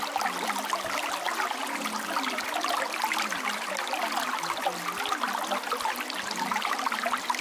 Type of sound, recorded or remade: recorded